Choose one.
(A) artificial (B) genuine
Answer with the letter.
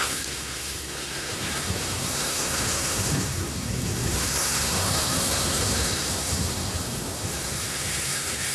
A